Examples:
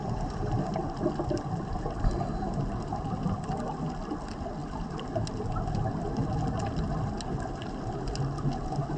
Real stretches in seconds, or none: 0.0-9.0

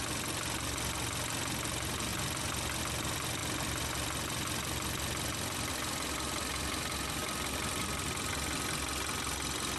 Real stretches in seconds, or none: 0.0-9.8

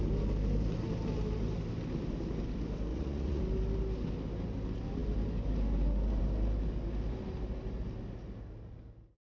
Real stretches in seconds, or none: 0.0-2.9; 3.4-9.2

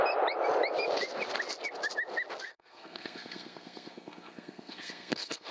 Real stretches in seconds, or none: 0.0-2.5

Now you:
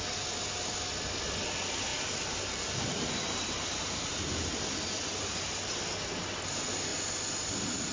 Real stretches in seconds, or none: 0.0-7.9